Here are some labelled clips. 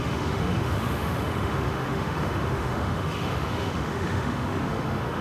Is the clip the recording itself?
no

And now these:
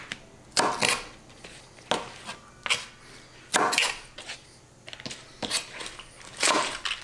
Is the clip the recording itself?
yes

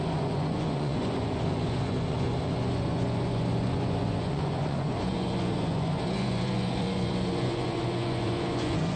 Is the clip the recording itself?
no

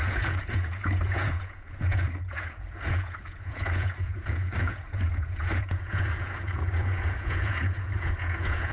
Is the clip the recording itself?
no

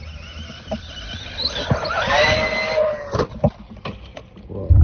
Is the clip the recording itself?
yes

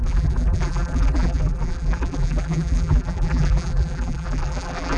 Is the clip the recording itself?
no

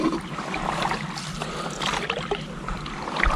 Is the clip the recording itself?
yes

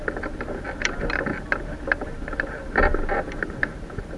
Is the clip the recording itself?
yes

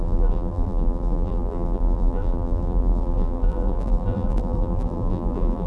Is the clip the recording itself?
no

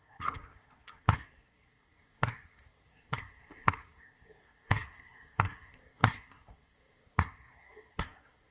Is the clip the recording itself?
no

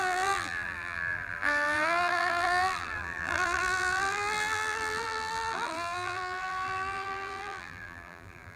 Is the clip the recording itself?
no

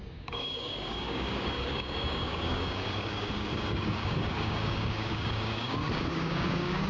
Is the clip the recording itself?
no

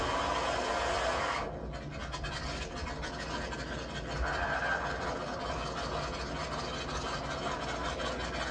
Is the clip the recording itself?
yes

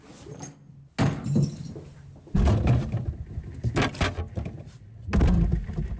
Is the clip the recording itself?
yes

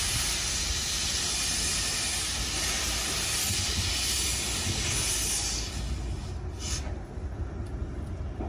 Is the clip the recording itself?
yes